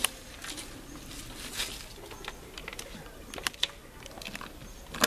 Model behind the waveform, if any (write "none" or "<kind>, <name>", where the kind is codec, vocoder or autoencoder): none